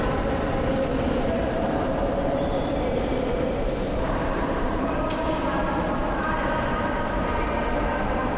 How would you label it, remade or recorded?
remade